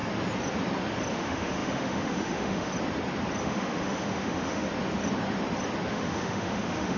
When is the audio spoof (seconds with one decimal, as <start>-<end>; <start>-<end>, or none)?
1.1-2.7; 3.4-4.7; 5.9-7.0